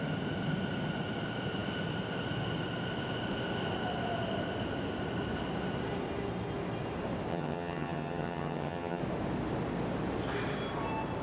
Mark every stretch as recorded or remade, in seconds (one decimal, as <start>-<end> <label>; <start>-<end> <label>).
0.0-7.3 recorded; 7.3-9.0 remade; 9.0-11.2 recorded